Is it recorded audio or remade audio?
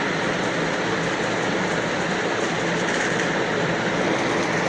recorded